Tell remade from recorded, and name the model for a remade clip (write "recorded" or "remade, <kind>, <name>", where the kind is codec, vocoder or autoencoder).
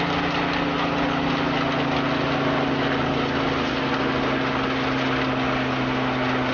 recorded